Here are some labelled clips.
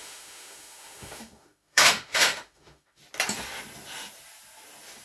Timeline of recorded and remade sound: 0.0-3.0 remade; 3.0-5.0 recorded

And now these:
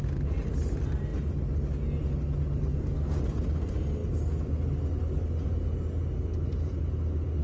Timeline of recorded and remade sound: 0.0-2.7 recorded; 2.7-3.2 remade; 3.2-7.4 recorded

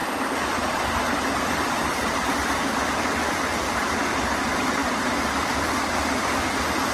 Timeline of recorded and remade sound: 0.0-4.1 remade; 4.1-4.8 recorded; 4.8-5.8 remade; 5.8-6.9 recorded

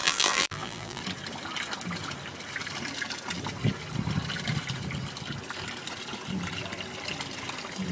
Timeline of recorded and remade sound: 0.0-1.0 remade; 1.0-7.9 recorded

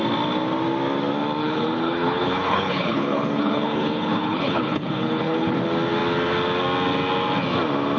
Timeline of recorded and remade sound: 0.0-1.4 recorded; 1.4-5.6 remade; 5.6-8.0 recorded